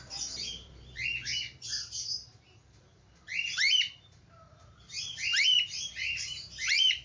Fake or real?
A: fake